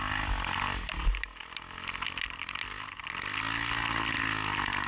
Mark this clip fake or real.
real